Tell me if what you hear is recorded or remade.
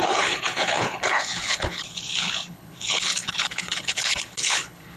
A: remade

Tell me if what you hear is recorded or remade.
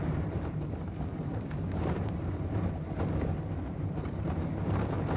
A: remade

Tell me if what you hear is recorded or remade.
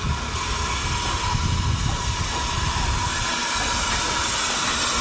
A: recorded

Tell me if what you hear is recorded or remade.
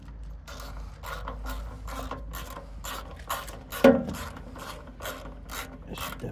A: recorded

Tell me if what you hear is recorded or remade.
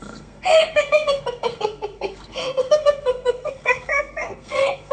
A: remade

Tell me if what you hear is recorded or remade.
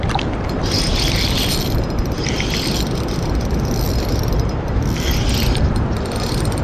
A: remade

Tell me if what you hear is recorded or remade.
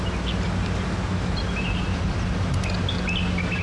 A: recorded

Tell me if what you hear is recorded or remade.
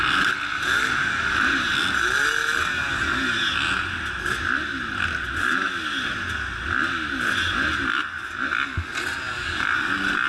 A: recorded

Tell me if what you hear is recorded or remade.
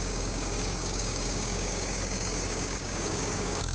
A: remade